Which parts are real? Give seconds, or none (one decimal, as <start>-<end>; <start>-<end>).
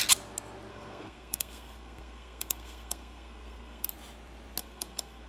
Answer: 0.0-0.7; 3.9-4.6